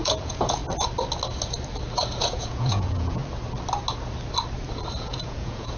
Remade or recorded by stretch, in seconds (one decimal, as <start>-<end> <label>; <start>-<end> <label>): 0.0-0.6 remade; 0.6-2.2 recorded; 2.2-3.2 remade; 3.2-5.0 recorded; 5.0-5.8 remade

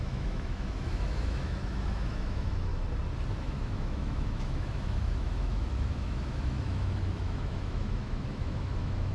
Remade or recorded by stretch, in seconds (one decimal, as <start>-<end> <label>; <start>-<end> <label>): 0.0-2.7 remade; 2.7-3.4 recorded; 3.4-9.1 remade

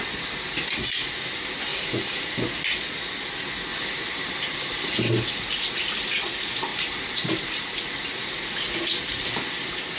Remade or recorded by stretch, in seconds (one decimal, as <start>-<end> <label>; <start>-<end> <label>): 0.0-1.7 recorded; 1.7-2.4 remade; 2.4-3.7 recorded; 3.7-5.1 remade; 5.1-6.7 recorded; 6.7-7.8 remade; 7.8-10.0 recorded

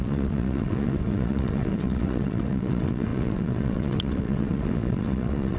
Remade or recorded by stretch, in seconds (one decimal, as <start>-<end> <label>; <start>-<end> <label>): 0.0-5.6 remade

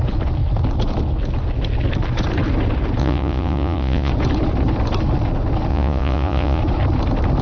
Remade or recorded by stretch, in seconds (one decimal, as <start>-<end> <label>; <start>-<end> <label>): 0.0-3.0 recorded; 3.0-4.1 remade; 4.1-5.7 recorded; 5.7-6.6 remade; 6.6-7.4 recorded

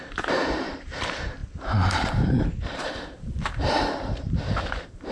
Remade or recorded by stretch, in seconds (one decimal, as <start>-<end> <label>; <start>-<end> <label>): 0.0-5.1 remade

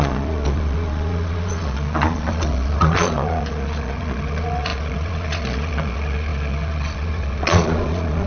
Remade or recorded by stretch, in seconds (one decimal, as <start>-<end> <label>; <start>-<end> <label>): 0.0-8.3 remade